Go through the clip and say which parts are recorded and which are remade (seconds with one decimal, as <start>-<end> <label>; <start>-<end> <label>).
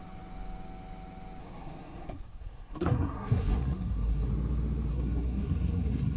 0.0-1.4 recorded; 1.4-4.3 remade; 4.3-4.9 recorded; 4.9-6.2 remade